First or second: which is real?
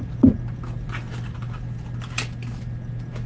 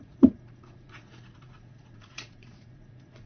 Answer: first